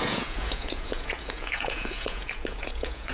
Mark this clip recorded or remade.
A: remade